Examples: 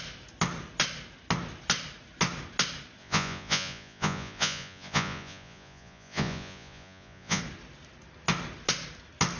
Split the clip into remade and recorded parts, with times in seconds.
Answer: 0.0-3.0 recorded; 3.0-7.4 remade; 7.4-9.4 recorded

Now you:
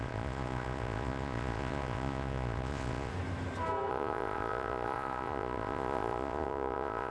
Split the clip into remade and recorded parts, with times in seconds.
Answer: 0.0-3.1 remade; 3.1-3.9 recorded; 3.9-7.1 remade

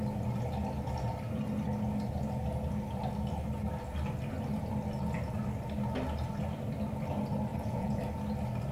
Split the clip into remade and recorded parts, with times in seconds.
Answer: 0.0-7.5 recorded; 7.5-8.0 remade; 8.0-8.7 recorded

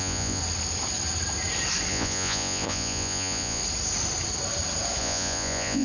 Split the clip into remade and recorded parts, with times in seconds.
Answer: 0.0-0.4 remade; 0.4-1.9 recorded; 1.9-3.6 remade; 3.6-5.0 recorded; 5.0-5.8 remade